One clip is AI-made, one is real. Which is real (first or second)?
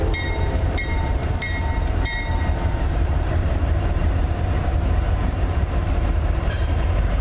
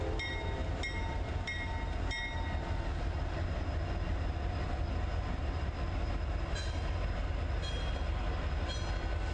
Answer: second